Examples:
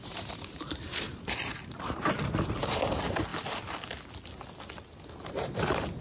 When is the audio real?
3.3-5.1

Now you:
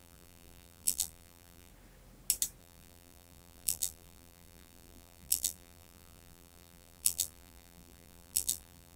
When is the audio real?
1.7-2.6

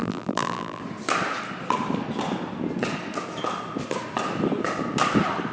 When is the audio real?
0.8-5.5

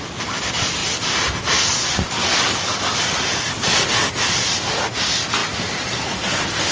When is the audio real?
0.0-6.7

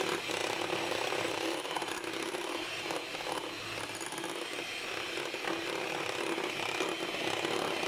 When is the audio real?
0.0-0.4; 2.8-7.9